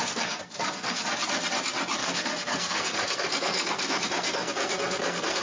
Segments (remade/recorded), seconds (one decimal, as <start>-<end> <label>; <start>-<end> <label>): 0.0-1.0 remade; 1.0-2.0 recorded; 2.0-5.4 remade